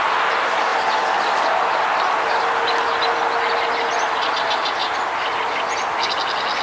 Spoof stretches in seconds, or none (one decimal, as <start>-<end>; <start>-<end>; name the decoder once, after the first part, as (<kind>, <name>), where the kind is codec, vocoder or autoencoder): none